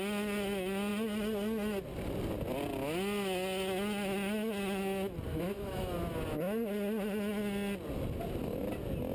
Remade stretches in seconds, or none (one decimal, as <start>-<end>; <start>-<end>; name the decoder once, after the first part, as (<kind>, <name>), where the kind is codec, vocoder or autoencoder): 5.3-5.9 (autoencoder, DAC-VAE)